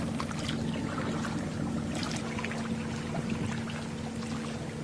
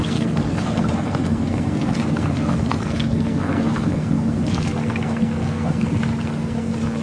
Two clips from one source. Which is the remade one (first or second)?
second